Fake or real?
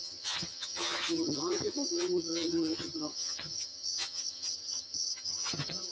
fake